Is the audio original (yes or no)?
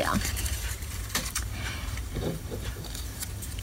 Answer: no